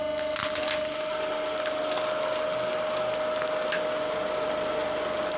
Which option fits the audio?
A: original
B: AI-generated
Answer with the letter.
A